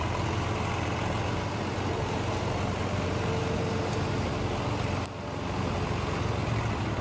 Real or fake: real